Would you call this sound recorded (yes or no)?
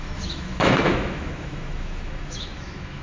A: no